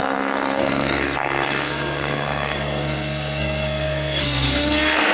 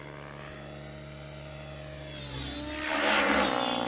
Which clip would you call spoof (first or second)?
first